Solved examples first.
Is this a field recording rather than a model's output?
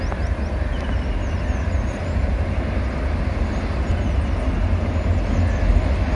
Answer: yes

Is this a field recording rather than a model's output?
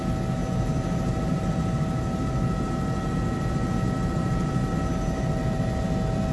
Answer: yes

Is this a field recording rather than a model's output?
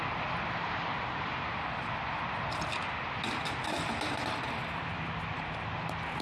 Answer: yes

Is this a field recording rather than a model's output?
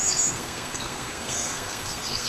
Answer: no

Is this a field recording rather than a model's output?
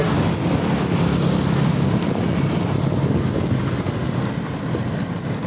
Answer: yes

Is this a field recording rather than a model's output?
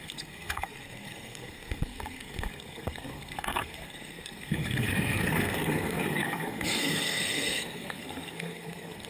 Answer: no